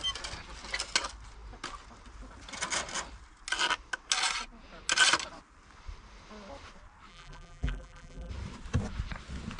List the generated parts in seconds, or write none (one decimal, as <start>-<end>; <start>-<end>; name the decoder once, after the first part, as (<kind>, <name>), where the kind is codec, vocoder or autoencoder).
7.1-8.3 (vocoder, BigVGAN v2)